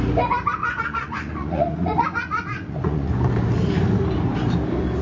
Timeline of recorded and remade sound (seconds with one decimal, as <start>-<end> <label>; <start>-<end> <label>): 0.0-0.6 recorded; 0.6-3.3 remade; 3.3-5.0 recorded